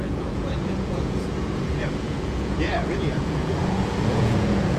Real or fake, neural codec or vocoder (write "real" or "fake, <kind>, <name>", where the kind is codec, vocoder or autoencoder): fake, vocoder, Vocos